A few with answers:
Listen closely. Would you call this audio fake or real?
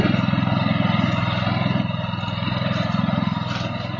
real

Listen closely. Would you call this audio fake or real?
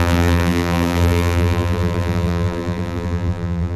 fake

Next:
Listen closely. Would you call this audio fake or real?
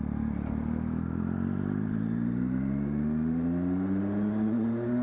real